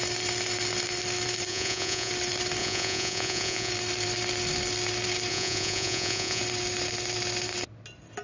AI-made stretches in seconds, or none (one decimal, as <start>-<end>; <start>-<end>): 1.5-2.1; 2.6-3.7; 5.3-6.4